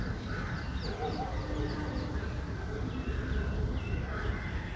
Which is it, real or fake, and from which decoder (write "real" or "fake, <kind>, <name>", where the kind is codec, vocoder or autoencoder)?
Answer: real